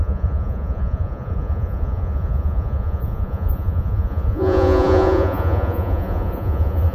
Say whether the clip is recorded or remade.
remade